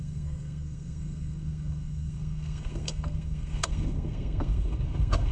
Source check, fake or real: fake